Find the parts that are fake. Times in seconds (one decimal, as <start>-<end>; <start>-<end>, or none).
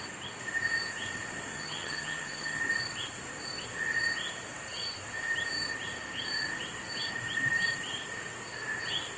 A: 1.5-2.6